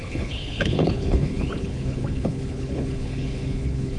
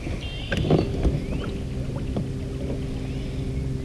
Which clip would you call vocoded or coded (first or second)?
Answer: first